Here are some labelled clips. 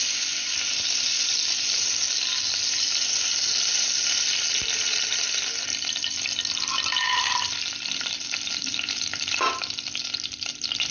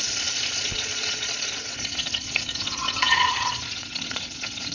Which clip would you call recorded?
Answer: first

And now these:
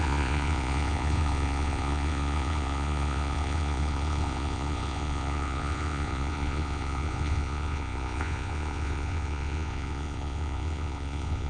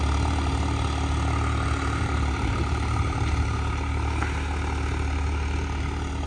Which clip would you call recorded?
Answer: second